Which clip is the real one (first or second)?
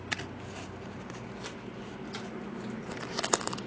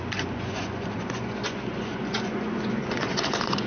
first